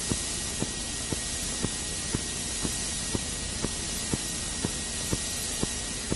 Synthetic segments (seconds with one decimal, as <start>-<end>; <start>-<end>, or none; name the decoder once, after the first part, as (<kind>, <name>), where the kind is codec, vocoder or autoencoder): 0.0-6.2 (vocoder, BigVGAN v2)